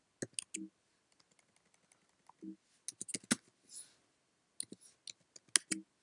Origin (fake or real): real